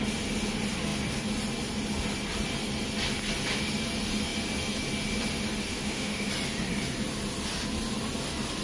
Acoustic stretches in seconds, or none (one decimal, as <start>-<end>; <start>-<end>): 0.0-5.7; 6.3-8.6